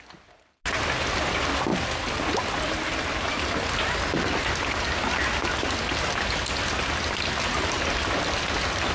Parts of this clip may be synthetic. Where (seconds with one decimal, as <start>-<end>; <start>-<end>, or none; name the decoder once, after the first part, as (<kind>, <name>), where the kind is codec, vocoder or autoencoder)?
none